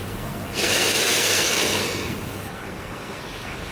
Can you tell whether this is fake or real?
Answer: fake